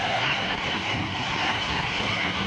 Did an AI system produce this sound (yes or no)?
yes